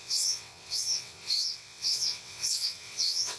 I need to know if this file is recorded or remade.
remade